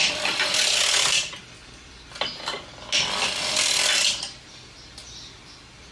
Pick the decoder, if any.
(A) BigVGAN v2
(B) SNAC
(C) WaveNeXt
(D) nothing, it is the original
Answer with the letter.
D